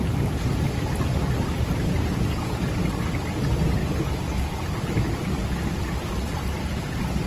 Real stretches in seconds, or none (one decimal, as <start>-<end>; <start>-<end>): 0.0-7.3